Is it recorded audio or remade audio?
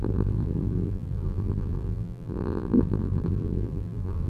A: remade